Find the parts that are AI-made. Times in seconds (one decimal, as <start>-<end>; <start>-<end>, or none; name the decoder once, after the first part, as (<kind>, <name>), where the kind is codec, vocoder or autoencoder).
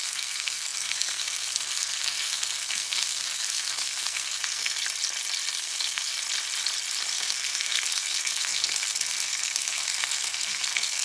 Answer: 0.0-4.8 (codec, SNAC); 5.6-6.1; 7.1-11.0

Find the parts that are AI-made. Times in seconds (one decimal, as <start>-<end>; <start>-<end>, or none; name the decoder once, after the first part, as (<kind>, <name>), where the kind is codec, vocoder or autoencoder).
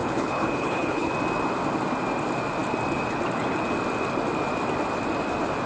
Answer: 0.0-1.1 (codec, HILCodec)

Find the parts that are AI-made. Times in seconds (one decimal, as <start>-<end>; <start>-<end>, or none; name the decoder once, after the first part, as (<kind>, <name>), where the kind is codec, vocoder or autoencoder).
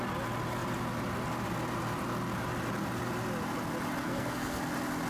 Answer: 4.0-4.6 (codec, SNAC)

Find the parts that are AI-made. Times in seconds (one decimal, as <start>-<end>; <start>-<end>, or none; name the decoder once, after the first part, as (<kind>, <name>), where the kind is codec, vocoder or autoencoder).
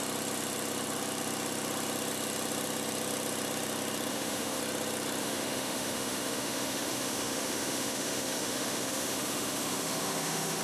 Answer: 4.1-4.6 (autoencoder, DAC-VAE); 5.2-10.6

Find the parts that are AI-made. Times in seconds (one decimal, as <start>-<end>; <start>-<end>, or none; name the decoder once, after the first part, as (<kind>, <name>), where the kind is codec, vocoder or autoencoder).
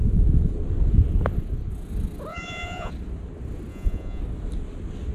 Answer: 2.3-2.9 (vocoder, Vocos); 3.7-4.2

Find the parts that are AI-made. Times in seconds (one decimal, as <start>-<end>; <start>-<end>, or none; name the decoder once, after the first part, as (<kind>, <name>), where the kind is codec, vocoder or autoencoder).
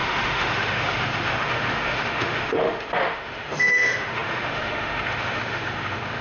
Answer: 0.0-6.2 (autoencoder, DAC-VAE)